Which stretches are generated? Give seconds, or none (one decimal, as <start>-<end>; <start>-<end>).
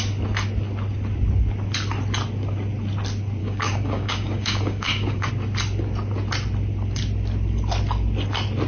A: 3.4-5.3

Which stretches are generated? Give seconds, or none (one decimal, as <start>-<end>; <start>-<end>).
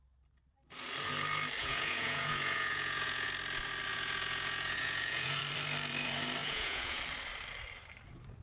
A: 1.6-3.3; 3.9-5.4; 6.4-7.0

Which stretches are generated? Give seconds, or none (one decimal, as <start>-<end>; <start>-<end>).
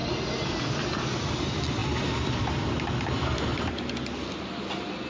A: none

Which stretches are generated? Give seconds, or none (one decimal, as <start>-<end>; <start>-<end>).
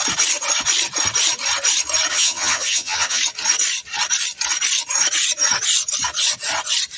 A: 2.1-3.2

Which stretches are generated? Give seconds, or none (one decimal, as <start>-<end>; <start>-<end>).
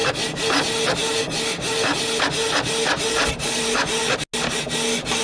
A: 3.1-4.0